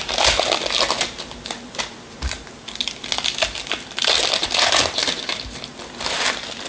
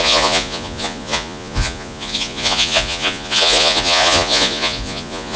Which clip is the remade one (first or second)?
second